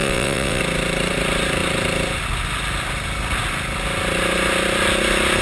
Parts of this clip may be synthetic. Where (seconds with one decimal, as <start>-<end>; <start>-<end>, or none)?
0.0-0.6